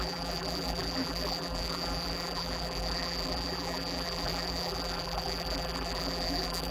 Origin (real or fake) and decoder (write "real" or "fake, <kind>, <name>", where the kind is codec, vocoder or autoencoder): fake, vocoder, BigVGAN v2